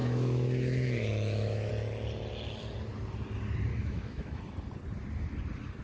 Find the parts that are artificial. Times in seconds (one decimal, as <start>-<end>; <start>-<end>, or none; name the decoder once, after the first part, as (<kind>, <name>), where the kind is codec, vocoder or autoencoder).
0.0-1.7 (autoencoder, DAC-VAE); 3.7-4.4